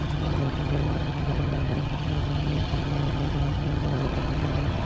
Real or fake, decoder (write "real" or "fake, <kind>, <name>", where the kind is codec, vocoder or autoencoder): fake, vocoder, HiFi-GAN